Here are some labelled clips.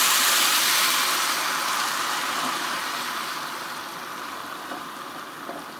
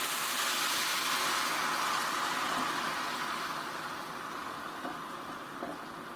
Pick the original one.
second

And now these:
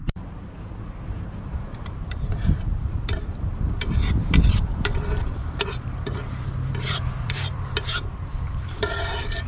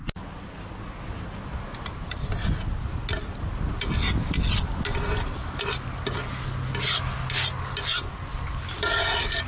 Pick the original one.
second